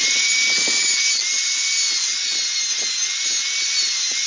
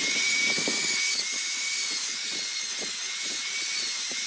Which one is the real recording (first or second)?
first